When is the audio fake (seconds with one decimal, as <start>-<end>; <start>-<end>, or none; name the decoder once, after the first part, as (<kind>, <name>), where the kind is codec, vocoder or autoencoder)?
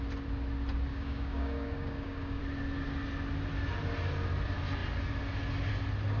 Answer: 0.9-2.4 (codec, DAC)